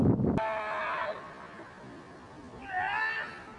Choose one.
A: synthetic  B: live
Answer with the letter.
B